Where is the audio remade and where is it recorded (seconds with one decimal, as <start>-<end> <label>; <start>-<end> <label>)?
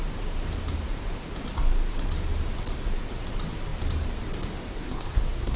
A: 0.0-4.7 recorded; 4.7-5.6 remade